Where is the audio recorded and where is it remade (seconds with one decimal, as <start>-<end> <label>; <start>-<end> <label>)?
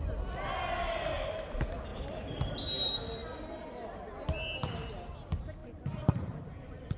0.0-1.9 recorded; 1.9-2.4 remade; 2.4-5.6 recorded; 5.6-7.0 remade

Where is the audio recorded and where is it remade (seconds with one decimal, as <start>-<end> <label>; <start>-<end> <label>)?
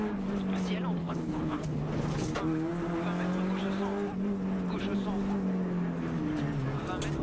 0.0-1.0 recorded; 1.0-1.8 remade; 1.8-7.2 recorded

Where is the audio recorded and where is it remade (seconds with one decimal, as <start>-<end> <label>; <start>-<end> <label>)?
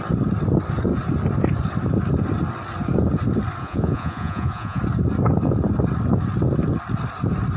0.0-3.6 recorded; 3.6-4.8 remade; 4.8-7.6 recorded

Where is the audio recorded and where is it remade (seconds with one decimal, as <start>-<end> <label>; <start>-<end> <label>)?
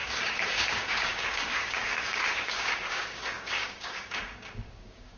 0.0-5.2 remade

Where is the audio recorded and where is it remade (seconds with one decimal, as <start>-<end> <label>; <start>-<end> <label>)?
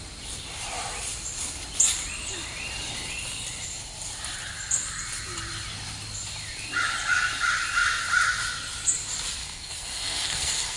0.0-9.4 recorded; 9.4-10.8 remade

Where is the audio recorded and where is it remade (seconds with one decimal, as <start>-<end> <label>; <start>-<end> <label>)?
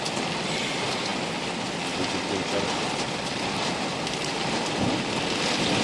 0.0-5.8 recorded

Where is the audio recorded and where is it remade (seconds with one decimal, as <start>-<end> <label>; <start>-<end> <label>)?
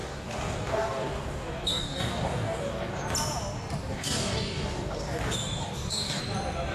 0.0-3.0 remade; 3.0-3.9 recorded; 3.9-6.2 remade; 6.2-6.7 recorded